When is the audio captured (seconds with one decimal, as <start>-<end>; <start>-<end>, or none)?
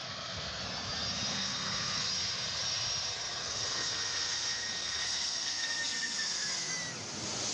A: 0.6-1.3; 2.1-3.4; 6.7-7.5